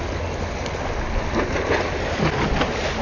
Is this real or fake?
real